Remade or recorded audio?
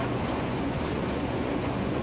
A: remade